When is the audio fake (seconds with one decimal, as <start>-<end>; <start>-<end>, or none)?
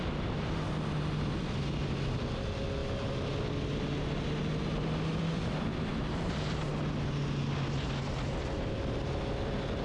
6.0-6.7